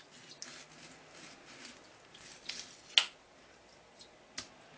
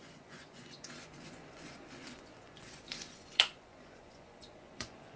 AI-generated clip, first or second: second